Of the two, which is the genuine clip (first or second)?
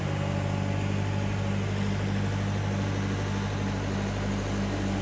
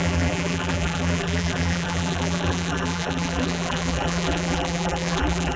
first